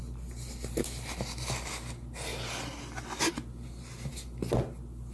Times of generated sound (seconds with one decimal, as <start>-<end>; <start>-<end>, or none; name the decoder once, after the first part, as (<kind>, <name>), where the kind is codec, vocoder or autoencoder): none